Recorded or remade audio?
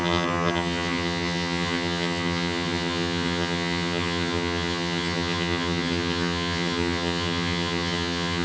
remade